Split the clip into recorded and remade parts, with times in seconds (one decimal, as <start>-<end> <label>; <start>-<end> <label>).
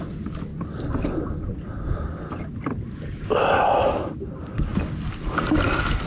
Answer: 0.0-6.1 recorded